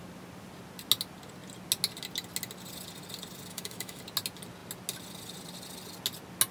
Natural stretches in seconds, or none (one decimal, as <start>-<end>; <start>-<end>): 0.0-3.5; 4.0-6.5